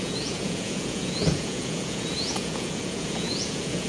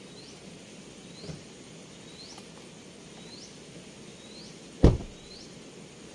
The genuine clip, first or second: second